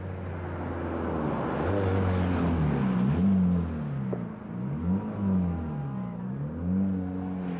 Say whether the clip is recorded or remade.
recorded